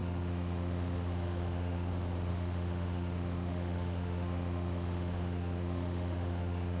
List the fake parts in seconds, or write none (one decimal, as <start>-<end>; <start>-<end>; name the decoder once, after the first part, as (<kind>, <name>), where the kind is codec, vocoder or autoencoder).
0.0-1.9 (autoencoder, DAC-VAE); 2.3-6.8